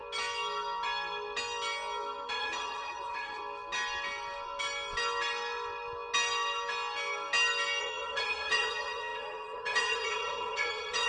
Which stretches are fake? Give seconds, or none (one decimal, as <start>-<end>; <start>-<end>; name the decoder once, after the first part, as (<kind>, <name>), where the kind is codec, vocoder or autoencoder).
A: 2.3-3.4 (vocoder, Vocos); 7.8-11.1